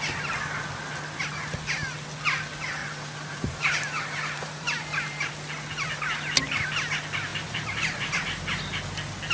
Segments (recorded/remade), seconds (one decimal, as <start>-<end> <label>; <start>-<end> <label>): 0.0-2.8 recorded; 2.8-5.3 remade; 5.3-7.3 recorded; 7.3-8.4 remade; 8.4-9.3 recorded